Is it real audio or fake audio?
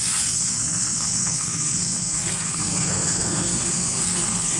fake